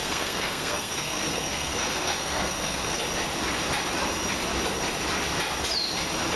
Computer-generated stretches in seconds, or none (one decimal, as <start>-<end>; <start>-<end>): 0.0-3.0

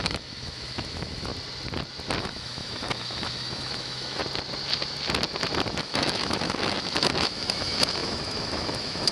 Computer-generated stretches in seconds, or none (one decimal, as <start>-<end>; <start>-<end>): 0.0-1.3; 2.2-4.2; 5.8-9.1

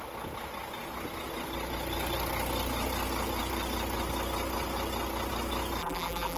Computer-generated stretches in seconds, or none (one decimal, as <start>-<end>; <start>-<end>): 5.8-6.4

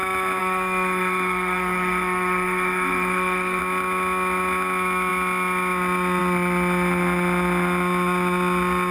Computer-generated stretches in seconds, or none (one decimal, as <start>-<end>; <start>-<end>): 0.4-3.6

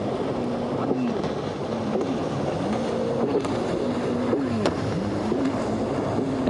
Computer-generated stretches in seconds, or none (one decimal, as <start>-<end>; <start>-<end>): none

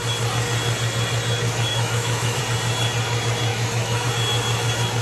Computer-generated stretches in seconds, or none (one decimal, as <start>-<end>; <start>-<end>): 1.7-2.4; 3.5-4.1

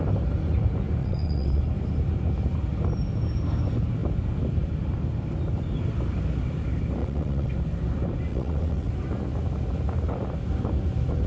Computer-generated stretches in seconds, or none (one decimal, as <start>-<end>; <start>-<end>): 1.0-1.6; 7.0-7.5; 8.3-8.9

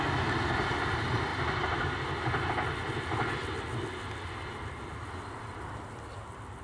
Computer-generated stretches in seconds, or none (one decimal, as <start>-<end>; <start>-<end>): none